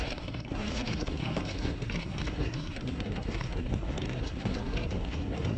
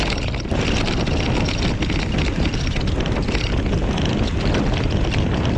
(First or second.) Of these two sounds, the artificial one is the first